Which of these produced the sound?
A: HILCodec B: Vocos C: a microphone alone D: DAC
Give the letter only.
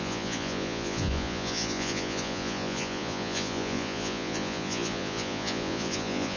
B